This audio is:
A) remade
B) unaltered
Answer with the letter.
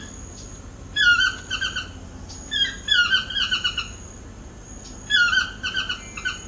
B